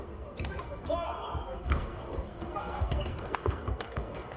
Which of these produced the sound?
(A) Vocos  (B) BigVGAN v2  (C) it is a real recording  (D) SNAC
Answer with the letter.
D